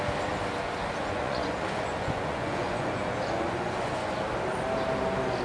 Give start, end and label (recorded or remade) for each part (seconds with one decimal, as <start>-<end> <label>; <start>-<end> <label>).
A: 0.0-1.0 recorded; 1.0-4.2 remade; 4.2-5.4 recorded

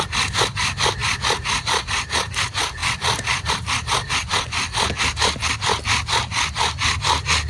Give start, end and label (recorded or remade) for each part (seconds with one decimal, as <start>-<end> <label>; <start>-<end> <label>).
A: 0.0-7.5 recorded

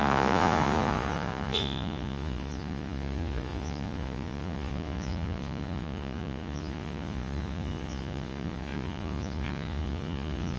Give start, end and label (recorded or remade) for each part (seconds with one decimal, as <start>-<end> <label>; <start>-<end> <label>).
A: 0.0-10.6 remade

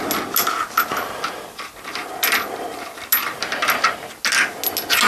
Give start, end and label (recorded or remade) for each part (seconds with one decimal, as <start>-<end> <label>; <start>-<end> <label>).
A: 0.0-5.1 recorded

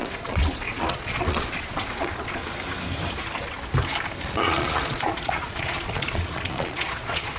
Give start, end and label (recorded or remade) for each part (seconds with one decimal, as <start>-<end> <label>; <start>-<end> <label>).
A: 0.0-2.4 remade; 2.4-4.2 recorded; 4.2-7.4 remade

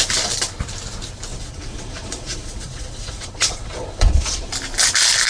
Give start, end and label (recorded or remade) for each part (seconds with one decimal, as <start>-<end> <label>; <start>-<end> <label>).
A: 0.0-1.3 recorded; 1.3-4.5 remade; 4.5-5.3 recorded

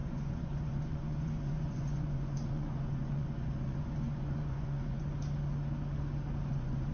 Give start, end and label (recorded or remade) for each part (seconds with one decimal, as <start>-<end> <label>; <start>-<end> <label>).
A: 0.0-5.1 remade; 5.1-6.5 recorded; 6.5-6.9 remade

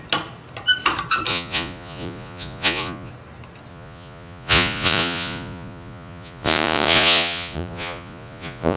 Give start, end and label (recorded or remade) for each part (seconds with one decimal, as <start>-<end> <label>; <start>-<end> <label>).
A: 0.0-1.3 recorded; 1.3-3.1 remade; 3.1-3.7 recorded; 3.7-8.8 remade